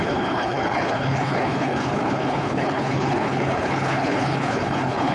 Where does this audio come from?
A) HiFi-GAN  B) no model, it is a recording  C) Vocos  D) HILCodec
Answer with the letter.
D